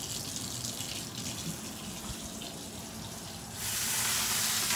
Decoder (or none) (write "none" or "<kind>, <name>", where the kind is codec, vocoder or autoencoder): none